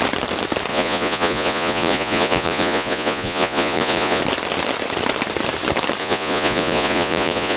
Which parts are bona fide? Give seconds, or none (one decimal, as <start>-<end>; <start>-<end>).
0.0-0.7; 4.2-6.0